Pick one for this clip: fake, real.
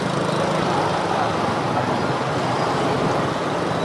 real